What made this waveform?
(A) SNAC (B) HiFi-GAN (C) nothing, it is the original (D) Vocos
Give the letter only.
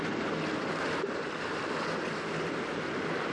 C